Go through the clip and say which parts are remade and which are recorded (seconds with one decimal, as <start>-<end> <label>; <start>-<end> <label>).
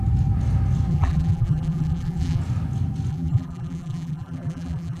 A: 0.0-0.9 recorded; 0.9-2.4 remade; 2.4-3.1 recorded; 3.1-5.0 remade